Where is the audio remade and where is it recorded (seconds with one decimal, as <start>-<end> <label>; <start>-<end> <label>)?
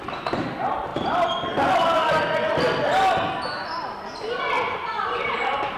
0.0-5.8 recorded